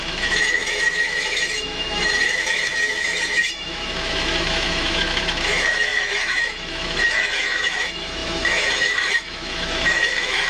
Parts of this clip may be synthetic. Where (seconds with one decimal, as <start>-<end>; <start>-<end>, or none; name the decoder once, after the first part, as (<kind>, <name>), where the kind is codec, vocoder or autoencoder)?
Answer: 0.0-10.5 (autoencoder, DAC-VAE)